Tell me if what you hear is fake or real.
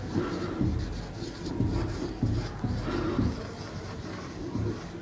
real